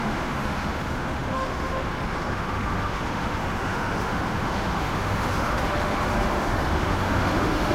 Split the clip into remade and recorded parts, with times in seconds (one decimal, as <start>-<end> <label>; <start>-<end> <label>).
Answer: 0.0-7.7 remade